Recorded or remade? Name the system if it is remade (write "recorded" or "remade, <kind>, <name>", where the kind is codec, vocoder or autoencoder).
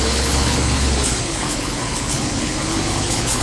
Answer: remade, codec, HILCodec